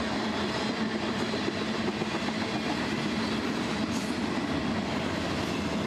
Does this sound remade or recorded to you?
recorded